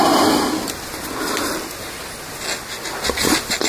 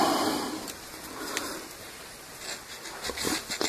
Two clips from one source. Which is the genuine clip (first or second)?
first